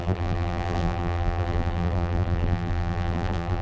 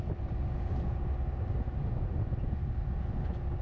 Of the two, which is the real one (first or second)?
second